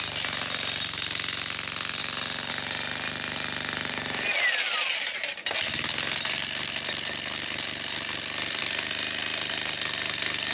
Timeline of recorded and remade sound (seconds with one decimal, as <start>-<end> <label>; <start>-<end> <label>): 0.0-10.5 recorded

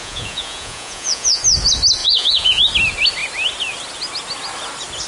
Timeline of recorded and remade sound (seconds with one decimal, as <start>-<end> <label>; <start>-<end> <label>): 0.0-1.4 remade; 1.4-2.0 recorded; 2.0-2.6 remade; 2.6-5.1 recorded

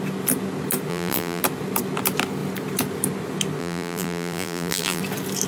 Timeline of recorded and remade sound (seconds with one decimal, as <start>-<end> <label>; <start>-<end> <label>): 0.0-0.9 recorded; 0.9-1.4 remade; 1.4-3.6 recorded; 3.6-5.0 remade; 5.0-5.5 recorded

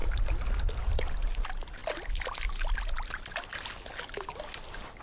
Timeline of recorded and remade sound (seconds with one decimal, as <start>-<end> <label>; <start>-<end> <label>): 0.0-0.8 recorded; 0.8-1.8 remade; 1.8-5.0 recorded

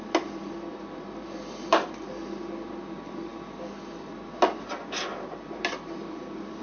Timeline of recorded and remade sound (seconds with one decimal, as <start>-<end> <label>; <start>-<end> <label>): 0.0-6.6 recorded

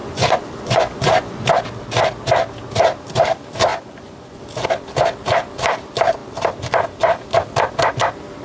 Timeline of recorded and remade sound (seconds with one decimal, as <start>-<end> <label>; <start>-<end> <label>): 0.0-1.5 remade; 1.5-3.7 recorded; 3.7-4.4 remade; 4.4-8.4 recorded

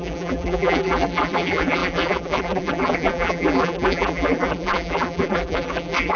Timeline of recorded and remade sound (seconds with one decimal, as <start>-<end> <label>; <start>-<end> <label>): 0.0-6.2 remade